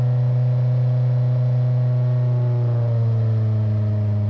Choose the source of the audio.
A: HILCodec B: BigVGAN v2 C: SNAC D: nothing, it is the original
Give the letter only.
D